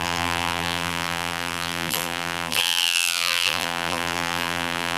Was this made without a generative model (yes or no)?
no